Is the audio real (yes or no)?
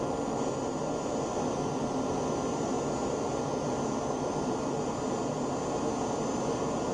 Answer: yes